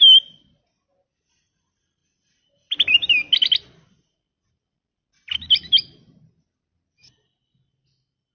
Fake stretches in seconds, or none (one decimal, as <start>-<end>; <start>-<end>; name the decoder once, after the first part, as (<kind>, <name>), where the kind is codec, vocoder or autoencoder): none

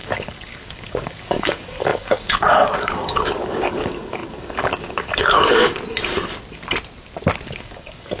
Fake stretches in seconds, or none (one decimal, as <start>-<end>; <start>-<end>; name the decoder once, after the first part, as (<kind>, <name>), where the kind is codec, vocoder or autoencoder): 0.0-5.6 (codec, DAC); 7.6-8.2

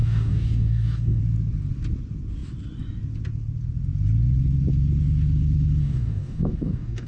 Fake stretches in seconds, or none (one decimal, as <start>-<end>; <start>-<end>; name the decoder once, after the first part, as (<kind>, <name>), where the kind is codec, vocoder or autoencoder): 0.0-1.2 (codec, DAC); 5.8-7.1

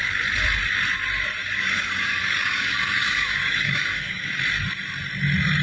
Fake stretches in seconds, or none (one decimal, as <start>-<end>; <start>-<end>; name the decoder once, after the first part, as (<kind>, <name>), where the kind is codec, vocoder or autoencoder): 1.4-4.3 (codec, DAC)